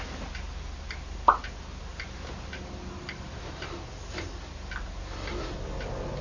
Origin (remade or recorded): recorded